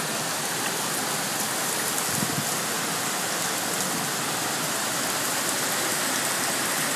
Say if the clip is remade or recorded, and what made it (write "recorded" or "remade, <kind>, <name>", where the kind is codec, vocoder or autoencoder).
recorded